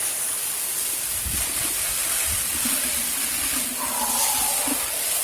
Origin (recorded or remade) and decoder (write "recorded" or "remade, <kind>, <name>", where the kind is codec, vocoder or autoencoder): recorded